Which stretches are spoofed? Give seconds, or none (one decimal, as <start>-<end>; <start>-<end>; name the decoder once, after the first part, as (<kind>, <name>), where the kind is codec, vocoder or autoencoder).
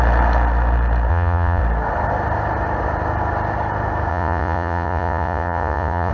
1.1-1.6 (vocoder, Vocos); 4.1-6.1